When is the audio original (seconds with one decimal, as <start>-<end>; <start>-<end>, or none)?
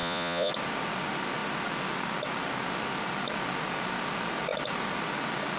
0.5-5.6